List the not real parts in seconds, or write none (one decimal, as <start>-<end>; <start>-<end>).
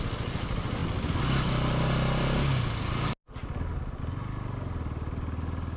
none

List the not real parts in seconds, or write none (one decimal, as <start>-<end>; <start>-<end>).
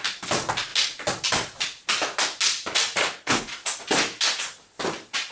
3.0-3.5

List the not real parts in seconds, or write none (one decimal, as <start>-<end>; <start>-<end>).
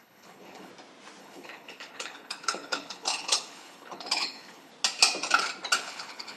0.0-0.7; 1.2-4.7; 5.8-6.4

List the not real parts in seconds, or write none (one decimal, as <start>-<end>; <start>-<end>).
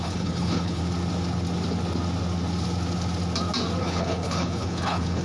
0.0-0.8; 3.8-5.2